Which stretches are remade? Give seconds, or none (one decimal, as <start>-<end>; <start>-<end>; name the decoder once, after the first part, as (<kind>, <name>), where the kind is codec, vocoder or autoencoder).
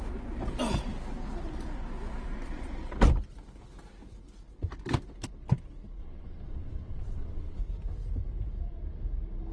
6.0-7.6 (vocoder, WaveNeXt)